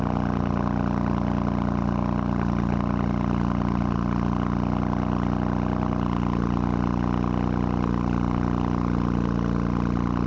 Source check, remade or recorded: recorded